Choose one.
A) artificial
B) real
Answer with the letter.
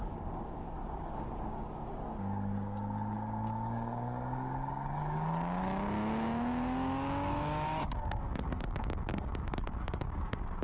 A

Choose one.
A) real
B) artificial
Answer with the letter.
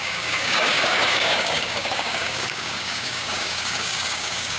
B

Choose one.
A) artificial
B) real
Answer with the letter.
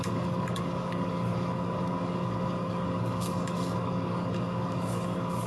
A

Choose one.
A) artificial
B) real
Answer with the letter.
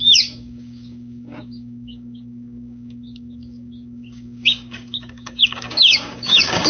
A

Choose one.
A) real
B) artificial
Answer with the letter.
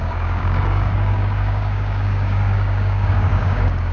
B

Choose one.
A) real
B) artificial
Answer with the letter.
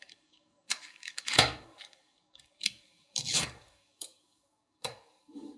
B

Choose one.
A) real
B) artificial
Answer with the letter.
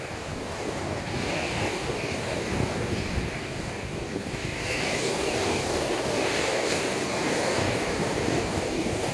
B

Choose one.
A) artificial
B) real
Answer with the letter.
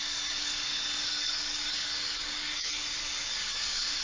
A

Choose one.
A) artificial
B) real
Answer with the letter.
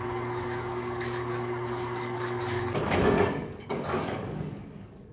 A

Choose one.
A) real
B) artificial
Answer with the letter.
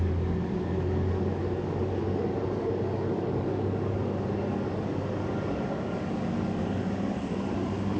B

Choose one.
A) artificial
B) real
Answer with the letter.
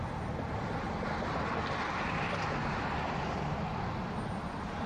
B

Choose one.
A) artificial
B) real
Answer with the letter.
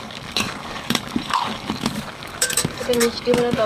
A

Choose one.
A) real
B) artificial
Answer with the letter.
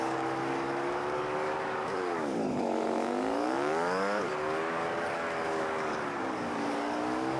B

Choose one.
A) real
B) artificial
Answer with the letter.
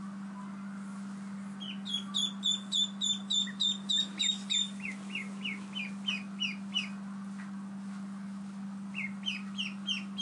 A